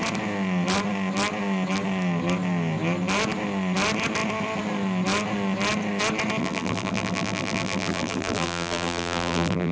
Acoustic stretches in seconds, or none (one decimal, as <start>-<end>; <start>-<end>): 0.0-6.4